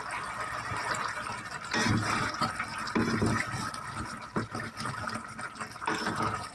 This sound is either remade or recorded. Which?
recorded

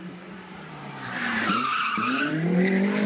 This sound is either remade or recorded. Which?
remade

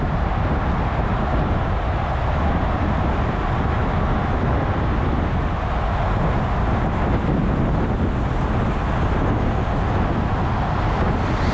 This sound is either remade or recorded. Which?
recorded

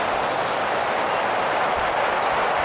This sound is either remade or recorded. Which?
recorded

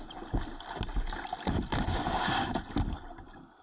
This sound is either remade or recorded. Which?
recorded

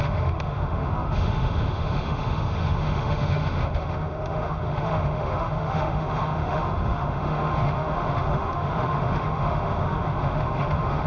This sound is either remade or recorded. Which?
remade